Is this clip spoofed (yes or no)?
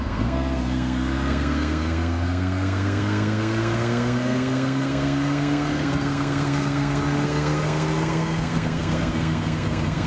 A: yes